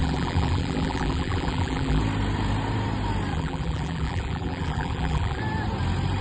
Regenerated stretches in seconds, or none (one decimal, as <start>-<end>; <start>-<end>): 0.0-2.0; 3.3-5.4